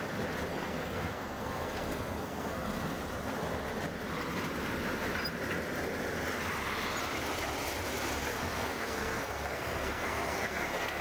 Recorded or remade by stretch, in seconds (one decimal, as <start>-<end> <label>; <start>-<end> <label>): 0.0-0.5 recorded; 0.5-3.0 remade; 3.0-8.3 recorded; 8.3-11.0 remade